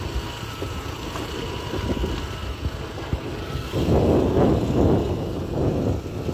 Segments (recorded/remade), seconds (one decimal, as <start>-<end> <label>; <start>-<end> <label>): 0.0-6.3 recorded